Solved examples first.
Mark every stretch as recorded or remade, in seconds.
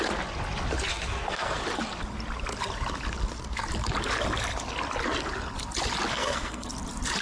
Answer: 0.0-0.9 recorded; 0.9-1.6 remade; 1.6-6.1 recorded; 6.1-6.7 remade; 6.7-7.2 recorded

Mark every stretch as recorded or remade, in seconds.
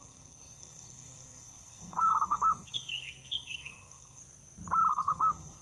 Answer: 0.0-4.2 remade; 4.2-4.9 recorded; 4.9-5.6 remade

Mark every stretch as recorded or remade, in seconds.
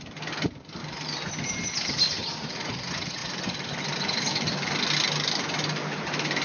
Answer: 0.0-6.4 recorded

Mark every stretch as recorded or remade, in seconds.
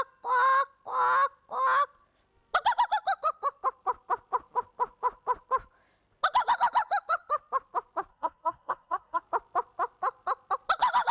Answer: 0.0-8.1 recorded; 8.1-9.2 remade; 9.2-11.1 recorded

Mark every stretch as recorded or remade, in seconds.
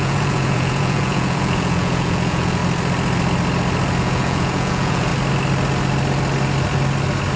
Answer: 0.0-2.6 remade; 2.6-4.0 recorded; 4.0-5.1 remade; 5.1-7.4 recorded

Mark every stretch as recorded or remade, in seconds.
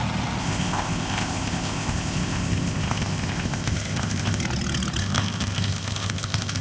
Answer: 0.0-0.4 recorded; 0.4-4.4 remade; 4.4-5.0 recorded; 5.0-6.6 remade